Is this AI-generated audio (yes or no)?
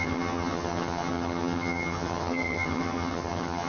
yes